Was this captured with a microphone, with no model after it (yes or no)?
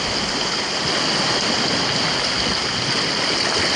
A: yes